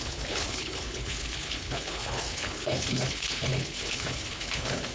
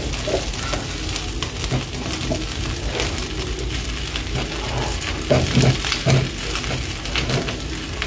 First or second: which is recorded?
second